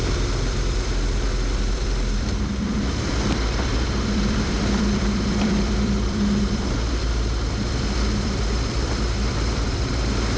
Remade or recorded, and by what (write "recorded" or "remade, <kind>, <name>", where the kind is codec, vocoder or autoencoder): remade, vocoder, BigVGAN v2